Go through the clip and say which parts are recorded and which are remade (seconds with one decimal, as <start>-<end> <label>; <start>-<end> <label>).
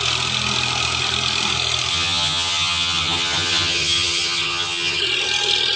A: 0.0-1.9 recorded; 1.9-5.0 remade; 5.0-5.8 recorded